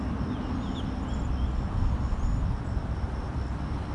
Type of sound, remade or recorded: recorded